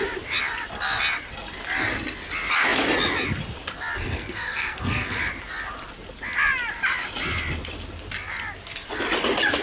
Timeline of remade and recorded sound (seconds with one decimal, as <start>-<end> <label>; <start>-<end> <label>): 0.0-4.0 recorded; 4.0-5.2 remade; 5.2-9.6 recorded

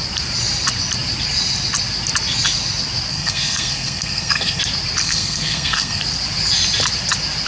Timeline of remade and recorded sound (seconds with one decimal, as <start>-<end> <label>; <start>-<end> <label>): 0.0-3.1 recorded; 3.1-4.6 remade; 4.6-5.0 recorded; 5.0-6.0 remade; 6.0-7.5 recorded